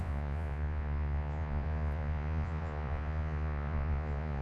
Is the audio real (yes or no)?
no